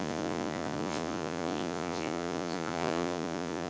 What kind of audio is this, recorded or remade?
remade